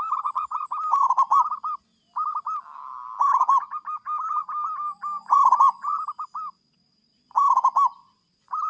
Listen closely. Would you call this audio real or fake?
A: real